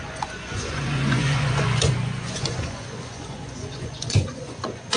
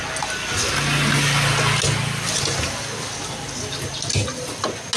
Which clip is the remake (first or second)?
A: first